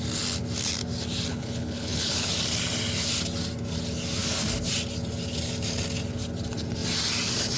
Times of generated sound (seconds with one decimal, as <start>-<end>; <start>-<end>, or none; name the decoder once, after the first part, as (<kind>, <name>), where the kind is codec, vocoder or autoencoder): 1.3-2.3 (codec, HILCodec)